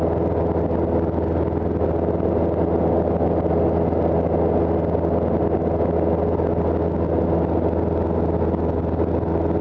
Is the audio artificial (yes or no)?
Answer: no